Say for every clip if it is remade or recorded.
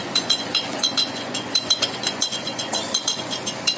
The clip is remade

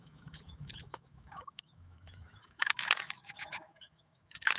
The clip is remade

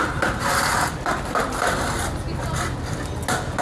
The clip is recorded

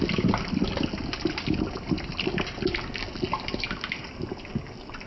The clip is recorded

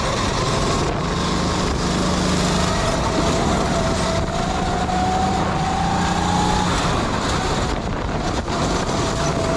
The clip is recorded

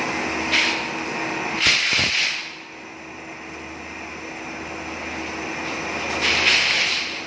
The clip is recorded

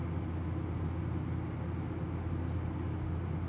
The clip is recorded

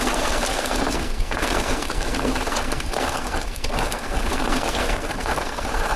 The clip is remade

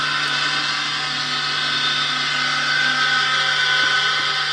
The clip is recorded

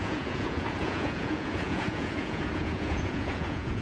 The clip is remade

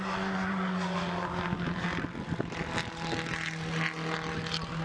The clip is recorded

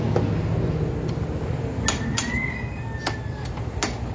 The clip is recorded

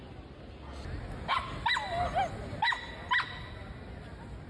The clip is recorded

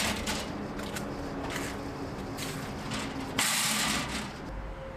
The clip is recorded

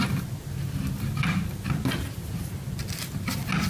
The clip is recorded